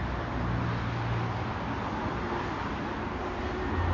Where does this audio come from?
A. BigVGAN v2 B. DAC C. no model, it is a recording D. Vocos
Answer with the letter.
C